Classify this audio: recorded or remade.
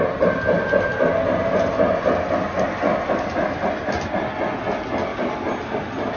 recorded